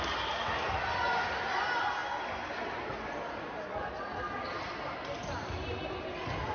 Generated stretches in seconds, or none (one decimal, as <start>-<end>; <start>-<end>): none